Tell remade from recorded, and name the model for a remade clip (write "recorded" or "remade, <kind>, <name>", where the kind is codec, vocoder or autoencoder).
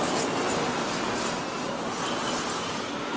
recorded